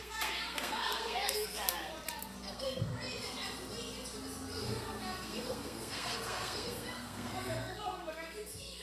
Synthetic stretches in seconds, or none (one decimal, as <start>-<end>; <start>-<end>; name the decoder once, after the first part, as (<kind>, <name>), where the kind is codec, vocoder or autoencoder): 0.0-1.9 (codec, SNAC); 2.5-2.9; 4.5-8.8